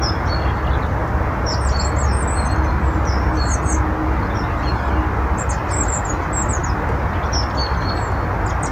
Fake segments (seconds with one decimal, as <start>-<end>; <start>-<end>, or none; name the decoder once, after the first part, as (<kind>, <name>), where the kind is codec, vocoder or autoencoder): 1.0-2.2 (vocoder, BigVGAN v2)